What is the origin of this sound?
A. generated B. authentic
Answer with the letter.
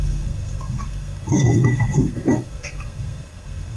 A